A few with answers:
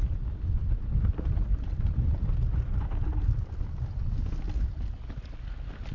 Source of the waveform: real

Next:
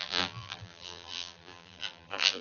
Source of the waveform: fake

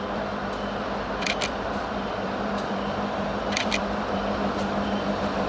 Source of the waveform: fake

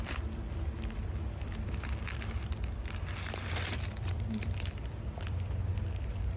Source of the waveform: fake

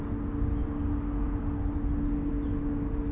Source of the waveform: real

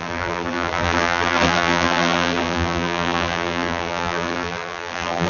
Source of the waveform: fake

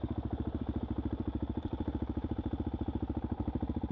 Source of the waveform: fake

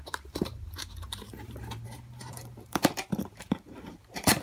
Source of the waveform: fake